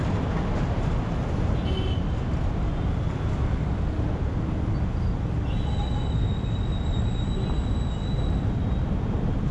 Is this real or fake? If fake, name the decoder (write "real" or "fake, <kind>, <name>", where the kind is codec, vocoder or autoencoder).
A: real